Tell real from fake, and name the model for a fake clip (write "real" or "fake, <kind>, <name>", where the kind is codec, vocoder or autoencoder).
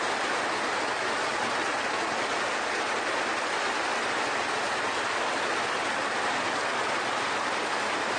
real